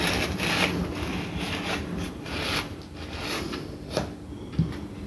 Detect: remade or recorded recorded